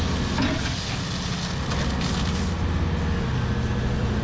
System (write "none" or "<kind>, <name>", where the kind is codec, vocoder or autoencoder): none